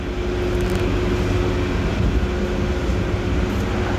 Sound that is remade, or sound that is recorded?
recorded